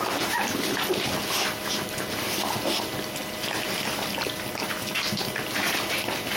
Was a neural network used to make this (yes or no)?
no